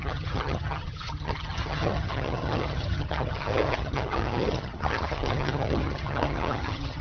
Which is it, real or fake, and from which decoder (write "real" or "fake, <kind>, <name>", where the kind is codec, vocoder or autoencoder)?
fake, vocoder, HiFi-GAN